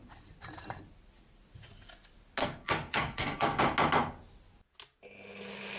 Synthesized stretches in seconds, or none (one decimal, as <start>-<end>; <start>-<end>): 2.4-3.6